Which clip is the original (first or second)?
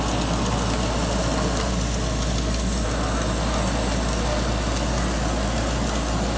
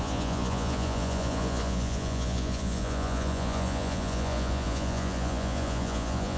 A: first